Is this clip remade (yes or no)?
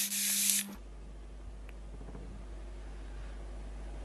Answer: no